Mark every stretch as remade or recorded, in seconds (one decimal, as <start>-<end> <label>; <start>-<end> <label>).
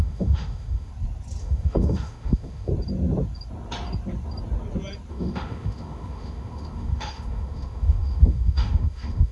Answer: 0.0-0.9 remade; 0.9-1.4 recorded; 1.4-2.7 remade; 2.7-5.1 recorded; 5.1-9.3 remade